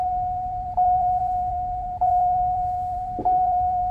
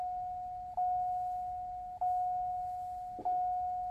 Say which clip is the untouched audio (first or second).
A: second